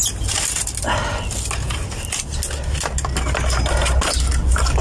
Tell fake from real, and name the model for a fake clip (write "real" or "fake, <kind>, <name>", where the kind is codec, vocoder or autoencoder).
real